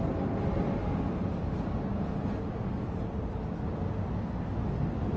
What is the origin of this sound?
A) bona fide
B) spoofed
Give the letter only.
A